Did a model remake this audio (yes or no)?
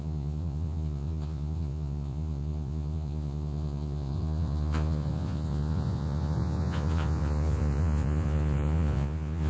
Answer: yes